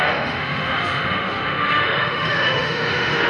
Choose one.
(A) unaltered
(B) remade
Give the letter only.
B